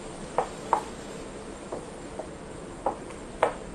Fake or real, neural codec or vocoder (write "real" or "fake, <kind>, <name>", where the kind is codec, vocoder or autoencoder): real